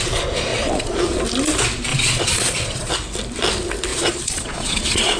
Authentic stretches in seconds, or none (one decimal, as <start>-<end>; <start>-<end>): 0.0-0.5; 1.2-1.9; 2.9-3.9